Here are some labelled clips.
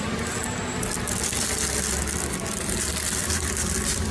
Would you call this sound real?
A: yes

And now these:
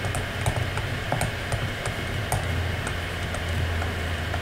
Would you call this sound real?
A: yes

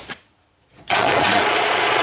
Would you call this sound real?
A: no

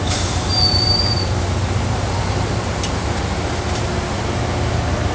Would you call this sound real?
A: yes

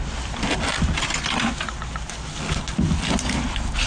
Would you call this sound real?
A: yes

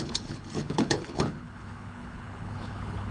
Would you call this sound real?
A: no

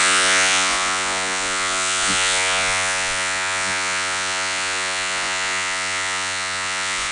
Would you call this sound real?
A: no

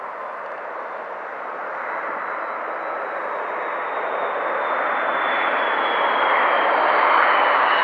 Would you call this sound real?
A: yes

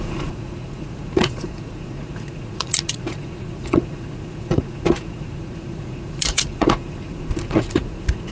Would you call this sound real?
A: no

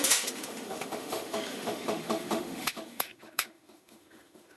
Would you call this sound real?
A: no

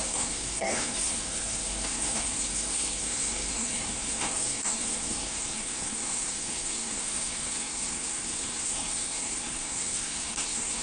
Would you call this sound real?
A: no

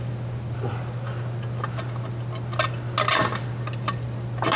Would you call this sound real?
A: yes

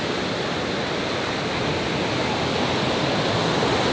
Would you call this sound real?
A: yes